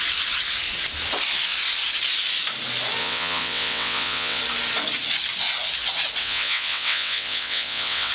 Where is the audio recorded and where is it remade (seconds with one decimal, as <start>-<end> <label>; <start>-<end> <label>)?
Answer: 0.0-3.0 recorded; 3.0-4.4 remade; 4.4-6.2 recorded; 6.2-8.1 remade